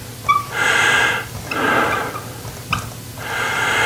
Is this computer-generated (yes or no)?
no